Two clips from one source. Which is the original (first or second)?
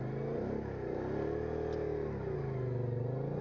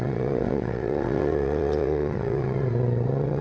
first